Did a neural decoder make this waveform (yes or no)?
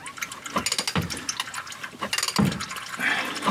no